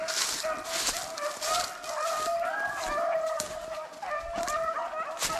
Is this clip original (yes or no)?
yes